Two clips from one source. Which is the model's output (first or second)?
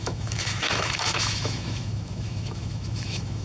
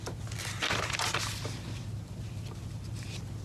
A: first